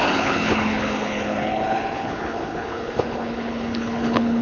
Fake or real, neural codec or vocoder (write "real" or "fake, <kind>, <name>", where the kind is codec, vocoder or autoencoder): fake, codec, HILCodec